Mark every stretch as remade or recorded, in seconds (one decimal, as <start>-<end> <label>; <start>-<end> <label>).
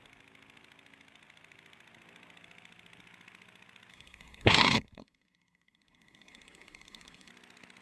0.0-3.9 recorded; 3.9-7.3 remade; 7.3-7.8 recorded